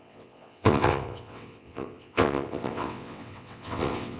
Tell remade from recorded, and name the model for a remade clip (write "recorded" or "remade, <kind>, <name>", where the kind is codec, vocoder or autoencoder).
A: remade, vocoder, WaveNeXt